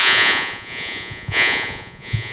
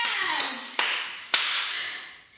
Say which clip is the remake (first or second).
first